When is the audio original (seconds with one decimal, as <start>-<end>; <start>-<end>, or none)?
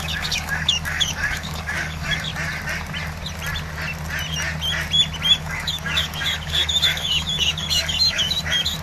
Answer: 2.3-5.4